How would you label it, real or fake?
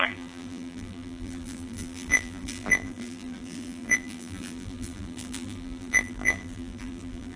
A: fake